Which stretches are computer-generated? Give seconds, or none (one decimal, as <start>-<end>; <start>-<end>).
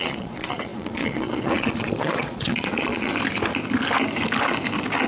0.0-3.1